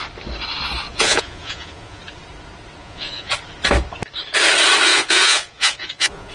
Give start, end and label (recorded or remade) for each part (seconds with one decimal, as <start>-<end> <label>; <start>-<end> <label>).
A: 0.0-0.9 recorded; 0.9-2.0 remade; 2.0-2.8 recorded; 2.8-3.3 remade; 3.3-4.9 recorded; 4.9-6.3 remade